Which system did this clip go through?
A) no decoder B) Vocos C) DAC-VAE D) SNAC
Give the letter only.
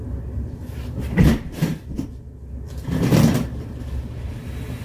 A